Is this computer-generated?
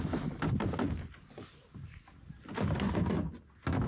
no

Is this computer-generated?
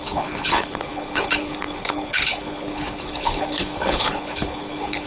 yes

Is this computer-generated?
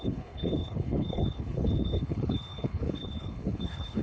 yes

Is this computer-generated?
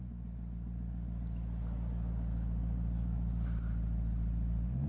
no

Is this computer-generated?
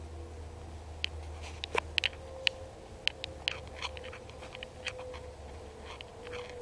no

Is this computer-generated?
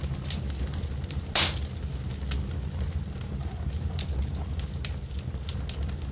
no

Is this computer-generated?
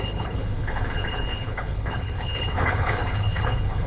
yes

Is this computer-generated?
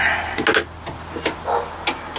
no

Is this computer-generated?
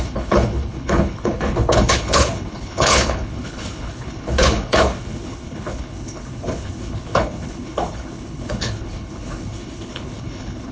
yes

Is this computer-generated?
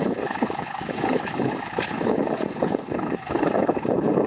yes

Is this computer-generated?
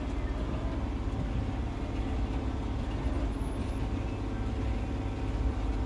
no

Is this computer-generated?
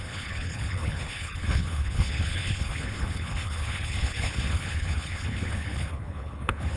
yes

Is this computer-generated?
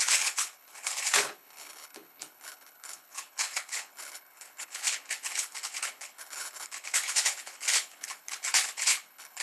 yes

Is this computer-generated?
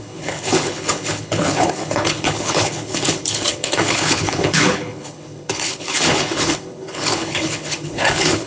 yes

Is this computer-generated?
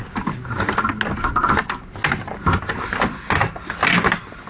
no